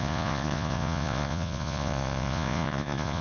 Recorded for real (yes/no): no